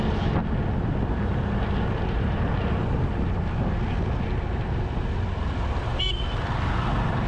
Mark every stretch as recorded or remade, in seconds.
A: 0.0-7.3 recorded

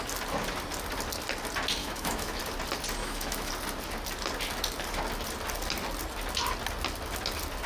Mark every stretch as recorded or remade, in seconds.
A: 0.0-1.8 recorded; 1.8-2.4 remade; 2.4-3.0 recorded; 3.0-3.5 remade; 3.5-7.7 recorded

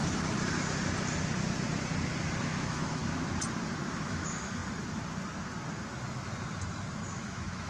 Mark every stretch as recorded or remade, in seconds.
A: 0.0-2.4 recorded; 2.4-3.0 remade; 3.0-3.9 recorded; 3.9-4.6 remade; 4.6-7.1 recorded; 7.1-7.7 remade